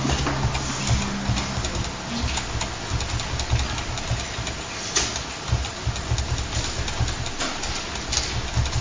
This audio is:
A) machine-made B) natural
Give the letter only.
B